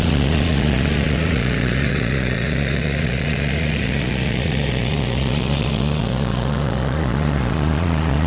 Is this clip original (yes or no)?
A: no